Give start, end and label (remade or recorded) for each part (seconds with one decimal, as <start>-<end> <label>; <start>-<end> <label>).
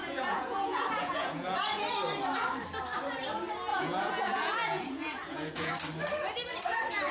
0.0-1.8 remade; 1.8-3.7 recorded; 3.7-5.7 remade; 5.7-7.1 recorded